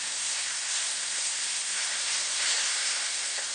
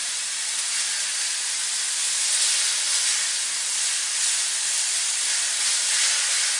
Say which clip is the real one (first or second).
second